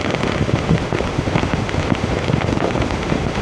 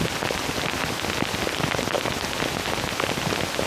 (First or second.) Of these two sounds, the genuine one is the second